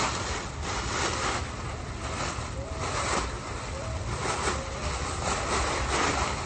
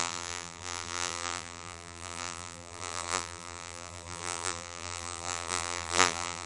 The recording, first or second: first